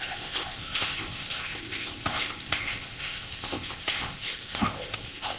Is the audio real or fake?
fake